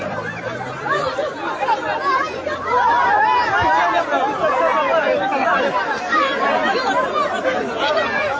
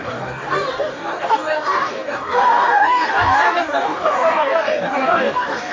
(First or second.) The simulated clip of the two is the second